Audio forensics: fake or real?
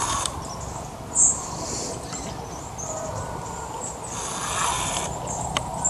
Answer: real